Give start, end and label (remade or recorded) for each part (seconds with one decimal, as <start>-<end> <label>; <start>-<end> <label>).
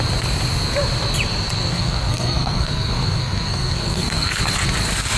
0.0-1.7 recorded; 1.7-4.4 remade; 4.4-5.2 recorded